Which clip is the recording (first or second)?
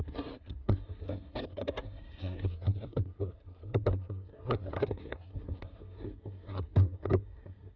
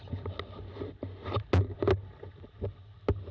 second